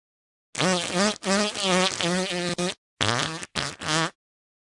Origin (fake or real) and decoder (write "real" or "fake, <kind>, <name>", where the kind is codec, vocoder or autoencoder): real